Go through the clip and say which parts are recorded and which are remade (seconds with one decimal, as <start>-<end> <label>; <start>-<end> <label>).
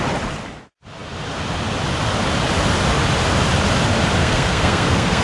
0.0-4.2 recorded; 4.2-5.2 remade